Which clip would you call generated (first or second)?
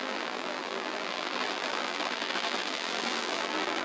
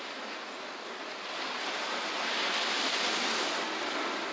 first